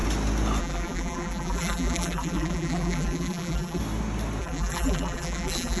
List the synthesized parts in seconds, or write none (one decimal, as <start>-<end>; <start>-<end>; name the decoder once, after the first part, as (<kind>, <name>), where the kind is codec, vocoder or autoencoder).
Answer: 0.6-3.8 (vocoder, BigVGAN v2); 4.4-5.8